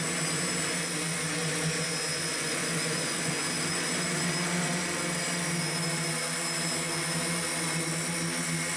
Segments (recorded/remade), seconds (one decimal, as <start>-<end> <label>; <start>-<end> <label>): 0.0-2.1 recorded; 2.1-3.3 remade; 3.3-8.8 recorded